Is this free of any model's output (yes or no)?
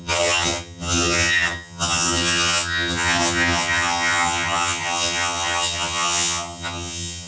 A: no